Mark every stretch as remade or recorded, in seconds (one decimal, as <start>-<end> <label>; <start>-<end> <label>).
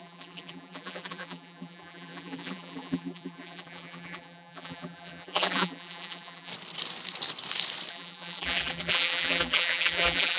0.0-6.5 remade; 6.5-7.9 recorded; 7.9-10.4 remade